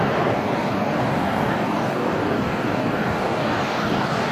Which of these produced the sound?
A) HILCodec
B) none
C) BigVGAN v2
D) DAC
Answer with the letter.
D